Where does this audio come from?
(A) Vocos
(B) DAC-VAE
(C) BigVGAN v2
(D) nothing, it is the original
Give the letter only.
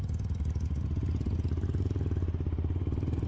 D